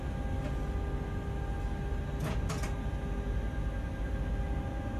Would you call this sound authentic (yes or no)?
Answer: yes